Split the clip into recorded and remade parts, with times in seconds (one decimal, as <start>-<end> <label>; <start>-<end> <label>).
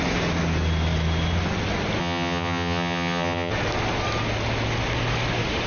0.0-2.0 recorded; 2.0-3.5 remade; 3.5-5.7 recorded